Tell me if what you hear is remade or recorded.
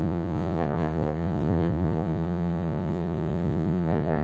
remade